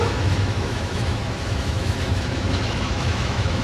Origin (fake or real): fake